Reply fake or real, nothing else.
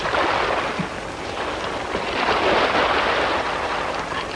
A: real